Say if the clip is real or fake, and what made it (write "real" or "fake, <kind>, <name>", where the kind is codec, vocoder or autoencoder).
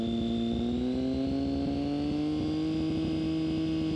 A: real